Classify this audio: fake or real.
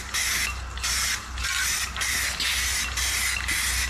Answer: real